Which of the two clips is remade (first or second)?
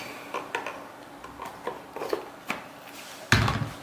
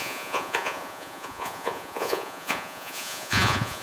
second